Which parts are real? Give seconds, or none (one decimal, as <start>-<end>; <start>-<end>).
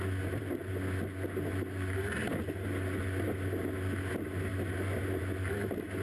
0.0-6.0